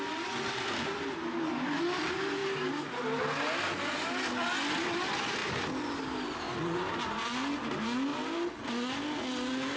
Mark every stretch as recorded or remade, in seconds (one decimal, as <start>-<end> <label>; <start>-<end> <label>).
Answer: 0.0-9.8 recorded